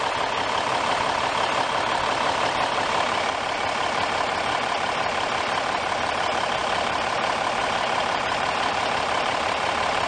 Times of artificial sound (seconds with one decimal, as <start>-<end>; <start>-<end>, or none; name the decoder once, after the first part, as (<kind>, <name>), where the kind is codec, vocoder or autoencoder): none